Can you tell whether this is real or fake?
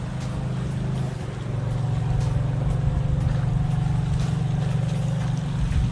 real